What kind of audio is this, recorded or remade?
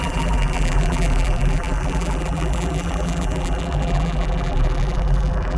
remade